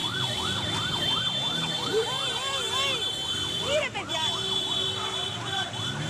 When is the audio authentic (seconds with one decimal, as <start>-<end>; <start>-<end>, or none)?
1.2-3.4; 4.1-6.1